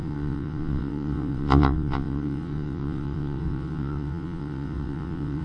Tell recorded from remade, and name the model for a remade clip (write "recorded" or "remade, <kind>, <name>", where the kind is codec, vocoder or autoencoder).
remade, vocoder, WaveNeXt